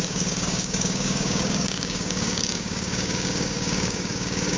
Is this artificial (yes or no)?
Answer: yes